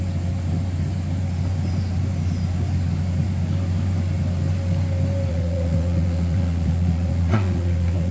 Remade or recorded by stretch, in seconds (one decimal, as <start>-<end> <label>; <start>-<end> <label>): 0.0-5.3 recorded; 5.3-8.1 remade